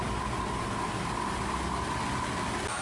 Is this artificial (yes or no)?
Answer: no